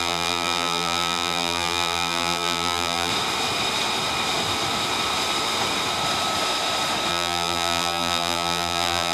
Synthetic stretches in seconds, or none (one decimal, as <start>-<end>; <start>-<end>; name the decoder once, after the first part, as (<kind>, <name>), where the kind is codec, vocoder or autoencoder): 0.0-3.1 (vocoder, BigVGAN v2); 7.1-9.1